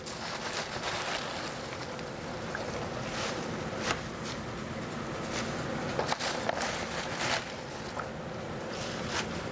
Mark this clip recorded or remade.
recorded